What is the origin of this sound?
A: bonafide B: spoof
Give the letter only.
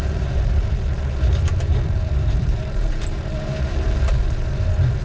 B